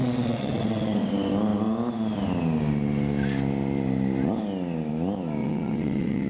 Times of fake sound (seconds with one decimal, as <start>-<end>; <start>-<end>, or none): 0.0-1.1; 5.4-6.3